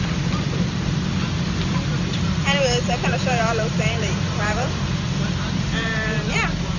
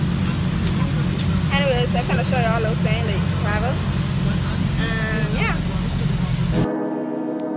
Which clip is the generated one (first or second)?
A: first